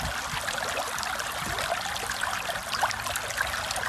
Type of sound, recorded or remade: recorded